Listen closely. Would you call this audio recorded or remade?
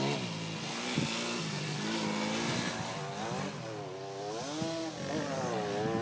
recorded